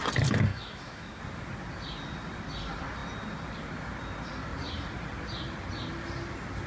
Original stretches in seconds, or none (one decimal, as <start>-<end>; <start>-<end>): 0.0-0.5; 1.2-6.7